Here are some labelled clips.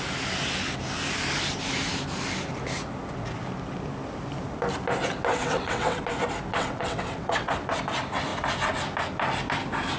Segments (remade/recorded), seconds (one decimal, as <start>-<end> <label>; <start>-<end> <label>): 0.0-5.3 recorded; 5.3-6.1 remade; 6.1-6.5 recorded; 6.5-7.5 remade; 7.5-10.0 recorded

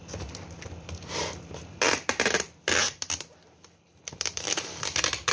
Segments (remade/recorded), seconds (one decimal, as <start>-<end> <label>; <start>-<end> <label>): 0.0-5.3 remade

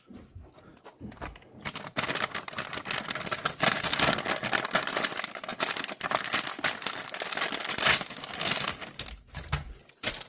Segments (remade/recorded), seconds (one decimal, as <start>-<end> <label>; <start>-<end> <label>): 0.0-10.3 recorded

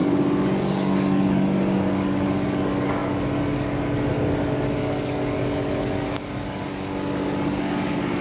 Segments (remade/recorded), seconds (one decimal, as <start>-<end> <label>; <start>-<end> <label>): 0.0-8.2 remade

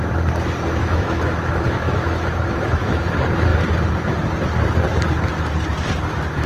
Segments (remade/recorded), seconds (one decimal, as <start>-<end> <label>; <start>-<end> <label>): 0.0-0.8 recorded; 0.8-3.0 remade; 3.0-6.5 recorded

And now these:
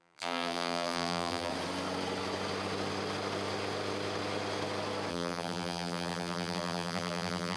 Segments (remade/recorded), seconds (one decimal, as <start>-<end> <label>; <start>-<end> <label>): 0.0-1.5 remade; 1.5-5.1 recorded; 5.1-7.6 remade

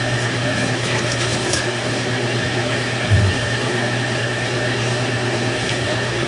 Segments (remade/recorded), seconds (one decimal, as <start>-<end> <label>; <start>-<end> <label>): 0.0-6.3 remade